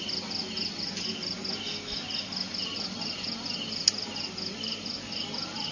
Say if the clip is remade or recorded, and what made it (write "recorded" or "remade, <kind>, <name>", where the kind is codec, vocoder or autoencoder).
recorded